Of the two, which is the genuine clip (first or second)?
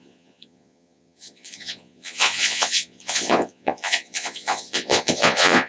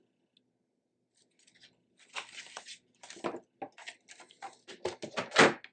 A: second